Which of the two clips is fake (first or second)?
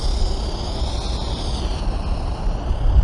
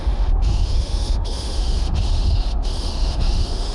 second